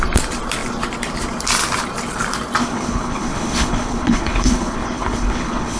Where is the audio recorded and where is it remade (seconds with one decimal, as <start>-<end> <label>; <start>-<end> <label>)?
0.0-2.6 recorded; 2.6-5.8 remade